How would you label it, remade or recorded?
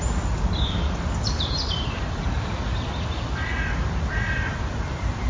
recorded